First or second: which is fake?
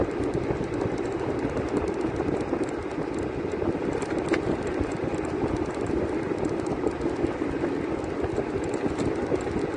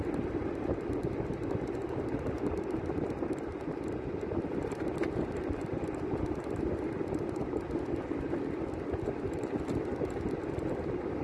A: second